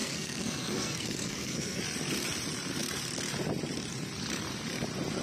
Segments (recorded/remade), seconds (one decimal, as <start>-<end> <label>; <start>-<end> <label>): 0.0-1.8 remade; 1.8-5.2 recorded